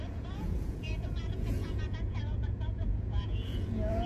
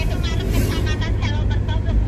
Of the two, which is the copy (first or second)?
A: first